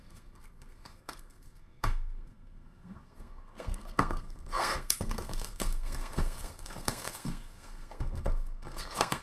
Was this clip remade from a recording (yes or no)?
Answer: yes